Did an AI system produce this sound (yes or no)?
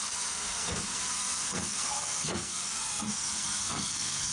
yes